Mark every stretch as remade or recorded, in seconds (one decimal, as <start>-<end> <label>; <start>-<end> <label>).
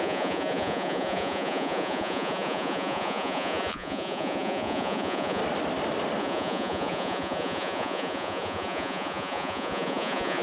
0.0-5.4 remade; 5.4-6.2 recorded; 6.2-10.4 remade